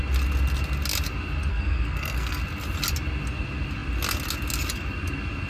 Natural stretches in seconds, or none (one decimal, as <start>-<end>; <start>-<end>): 0.0-1.5; 2.4-5.5